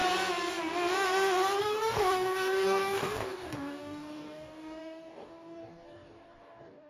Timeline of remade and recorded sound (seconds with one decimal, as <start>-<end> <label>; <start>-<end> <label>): 0.0-1.6 recorded; 1.6-6.9 remade